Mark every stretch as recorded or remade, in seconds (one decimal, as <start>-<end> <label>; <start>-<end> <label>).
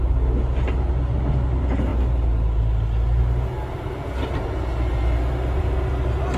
0.0-6.4 recorded